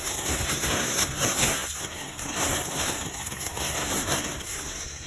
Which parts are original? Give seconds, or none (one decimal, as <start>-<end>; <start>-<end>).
none